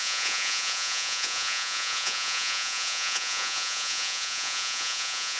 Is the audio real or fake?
fake